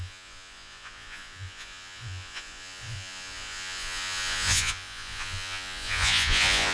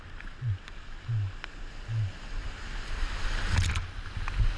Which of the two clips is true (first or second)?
second